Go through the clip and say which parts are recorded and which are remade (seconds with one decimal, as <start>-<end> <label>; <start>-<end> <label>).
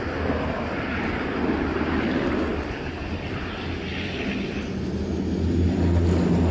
0.0-6.5 recorded